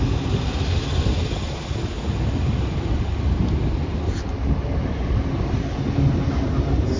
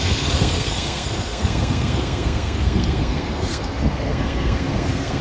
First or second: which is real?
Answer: first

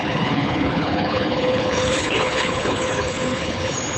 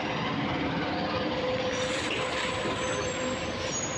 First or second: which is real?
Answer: second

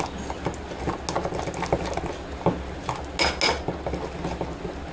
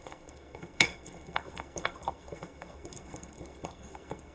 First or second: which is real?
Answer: first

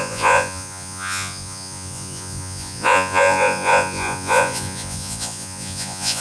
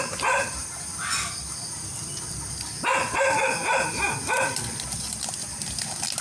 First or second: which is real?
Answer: second